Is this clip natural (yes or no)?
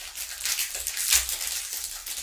yes